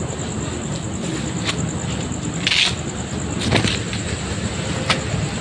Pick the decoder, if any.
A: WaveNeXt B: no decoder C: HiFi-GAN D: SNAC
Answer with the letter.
B